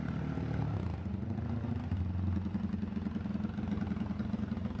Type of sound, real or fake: real